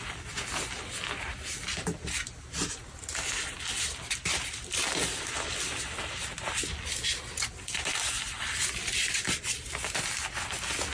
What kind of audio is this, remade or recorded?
recorded